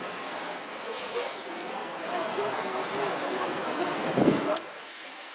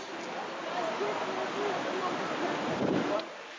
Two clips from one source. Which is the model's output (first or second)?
first